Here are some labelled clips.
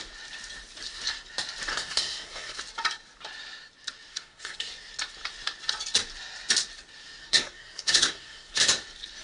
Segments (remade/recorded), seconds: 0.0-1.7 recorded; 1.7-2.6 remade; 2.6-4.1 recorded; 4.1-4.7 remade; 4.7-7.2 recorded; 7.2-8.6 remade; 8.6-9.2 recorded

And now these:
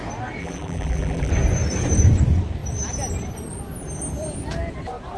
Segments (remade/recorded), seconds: 0.0-0.4 recorded; 0.4-1.3 remade; 1.3-5.2 recorded